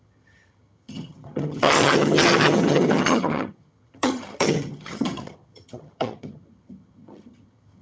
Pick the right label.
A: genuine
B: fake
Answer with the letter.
B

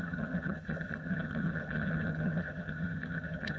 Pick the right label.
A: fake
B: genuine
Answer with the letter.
A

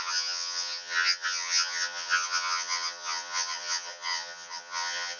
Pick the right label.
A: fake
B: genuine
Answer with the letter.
A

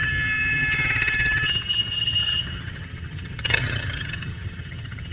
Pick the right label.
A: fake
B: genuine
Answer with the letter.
A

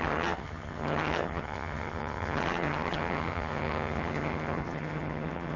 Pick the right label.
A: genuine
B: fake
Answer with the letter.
B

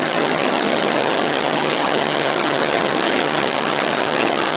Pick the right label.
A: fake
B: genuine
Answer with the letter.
A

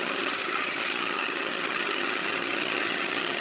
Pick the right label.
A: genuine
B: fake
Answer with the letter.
B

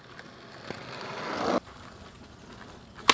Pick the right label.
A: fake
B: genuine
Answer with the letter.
B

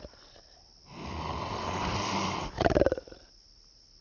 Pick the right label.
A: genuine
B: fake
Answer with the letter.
A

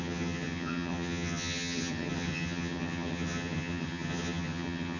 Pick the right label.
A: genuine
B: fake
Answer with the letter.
B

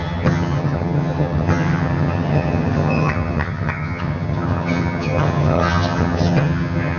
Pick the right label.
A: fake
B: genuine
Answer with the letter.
A